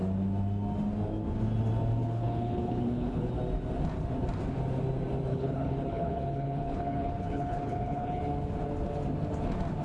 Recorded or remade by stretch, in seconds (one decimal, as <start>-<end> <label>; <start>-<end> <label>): 0.0-2.0 recorded; 2.0-3.3 remade; 3.3-5.3 recorded; 5.3-8.2 remade; 8.2-9.8 recorded